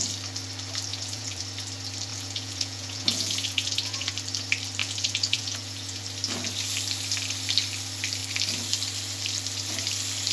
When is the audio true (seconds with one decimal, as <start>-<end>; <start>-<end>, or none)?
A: 0.0-0.9; 1.4-2.1; 4.1-4.8; 6.0-10.3